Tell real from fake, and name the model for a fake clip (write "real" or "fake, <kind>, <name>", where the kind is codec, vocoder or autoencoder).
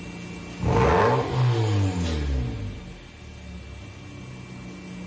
real